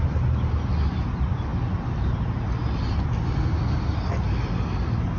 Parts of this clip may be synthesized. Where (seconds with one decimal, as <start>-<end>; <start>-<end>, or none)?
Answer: none